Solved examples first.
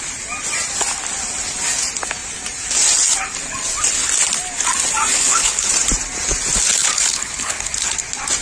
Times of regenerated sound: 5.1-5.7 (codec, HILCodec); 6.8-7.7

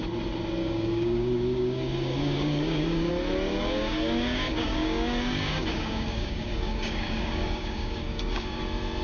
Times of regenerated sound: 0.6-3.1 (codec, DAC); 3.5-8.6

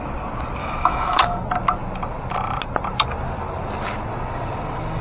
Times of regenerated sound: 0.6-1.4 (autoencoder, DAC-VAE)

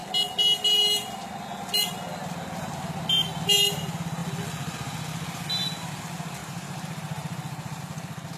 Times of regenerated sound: 6.4-7.8 (vocoder, BigVGAN v2)

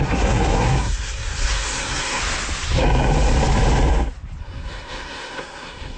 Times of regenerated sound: 0.0-2.2 (codec, SNAC); 4.4-6.0

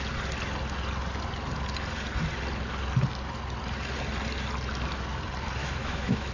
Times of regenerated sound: 5.6-6.3 (autoencoder, DAC-VAE)